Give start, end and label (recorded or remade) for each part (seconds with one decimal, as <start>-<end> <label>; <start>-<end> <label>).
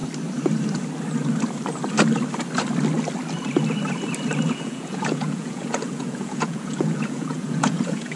0.0-4.5 recorded; 4.5-8.2 remade